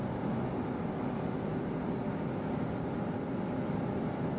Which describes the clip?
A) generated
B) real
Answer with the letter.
B